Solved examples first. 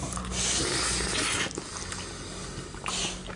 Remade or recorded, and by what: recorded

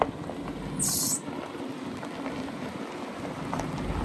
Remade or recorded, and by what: recorded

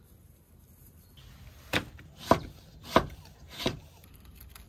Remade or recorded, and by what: recorded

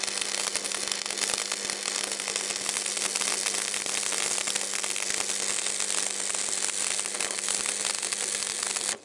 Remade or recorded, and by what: recorded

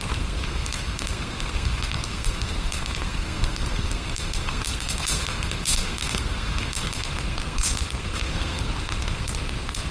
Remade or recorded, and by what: remade, codec, SNAC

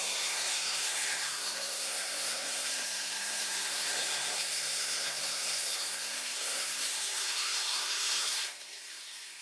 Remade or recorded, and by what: remade, codec, SNAC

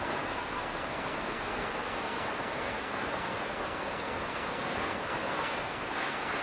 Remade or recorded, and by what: remade, codec, SNAC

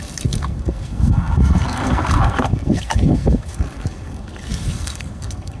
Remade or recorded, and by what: remade, codec, SNAC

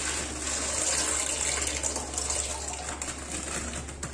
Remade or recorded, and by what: recorded